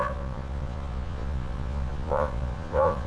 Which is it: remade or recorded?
remade